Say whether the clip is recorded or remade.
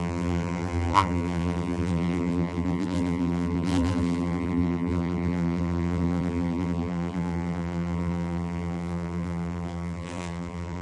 remade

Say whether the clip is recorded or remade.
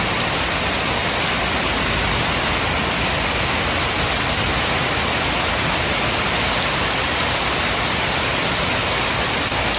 recorded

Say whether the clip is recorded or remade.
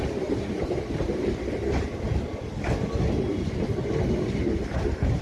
recorded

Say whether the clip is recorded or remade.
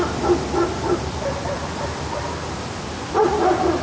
recorded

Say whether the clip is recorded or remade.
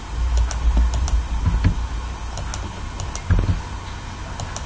recorded